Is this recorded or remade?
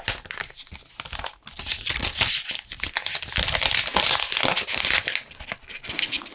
recorded